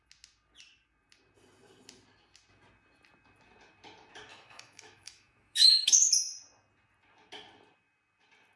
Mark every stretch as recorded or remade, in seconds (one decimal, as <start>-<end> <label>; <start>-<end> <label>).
0.0-4.3 recorded; 4.3-6.1 remade; 6.1-8.6 recorded

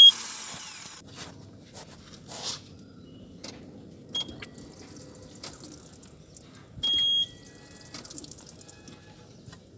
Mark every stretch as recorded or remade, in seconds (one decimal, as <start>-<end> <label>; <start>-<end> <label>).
0.0-9.8 recorded

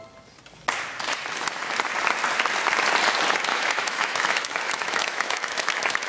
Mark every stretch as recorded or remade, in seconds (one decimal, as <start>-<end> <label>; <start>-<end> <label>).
0.0-3.5 recorded; 3.5-6.1 remade

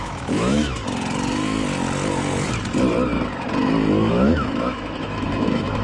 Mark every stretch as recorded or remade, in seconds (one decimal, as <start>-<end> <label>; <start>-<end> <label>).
0.0-0.8 remade; 0.8-4.1 recorded; 4.1-5.8 remade

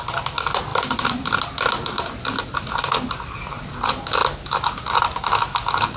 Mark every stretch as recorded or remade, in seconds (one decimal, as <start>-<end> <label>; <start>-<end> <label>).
0.0-6.0 recorded

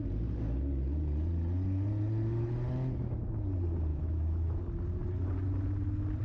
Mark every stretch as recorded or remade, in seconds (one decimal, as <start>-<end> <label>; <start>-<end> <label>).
0.0-3.9 recorded; 3.9-4.6 remade; 4.6-6.2 recorded

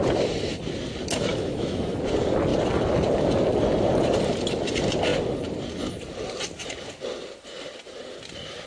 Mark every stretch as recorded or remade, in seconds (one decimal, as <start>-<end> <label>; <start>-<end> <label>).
0.0-1.3 recorded; 1.3-2.0 remade; 2.0-8.7 recorded

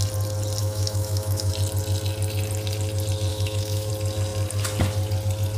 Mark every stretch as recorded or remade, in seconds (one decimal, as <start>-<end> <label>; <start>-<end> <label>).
0.0-0.6 recorded; 0.6-1.5 remade; 1.5-3.3 recorded; 3.3-3.9 remade; 3.9-5.6 recorded